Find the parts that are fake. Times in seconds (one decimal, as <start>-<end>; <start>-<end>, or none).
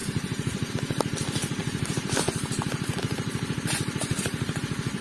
0.0-0.7; 1.6-4.6